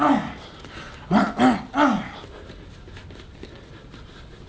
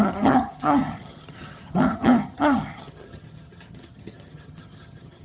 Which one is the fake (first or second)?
second